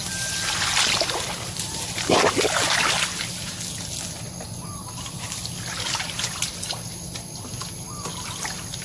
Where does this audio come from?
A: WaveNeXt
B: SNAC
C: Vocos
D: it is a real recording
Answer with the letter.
D